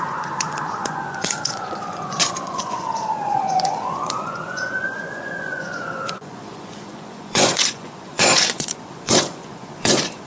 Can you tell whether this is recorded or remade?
remade